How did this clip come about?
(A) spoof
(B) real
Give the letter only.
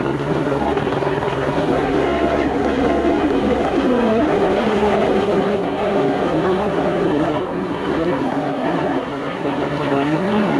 A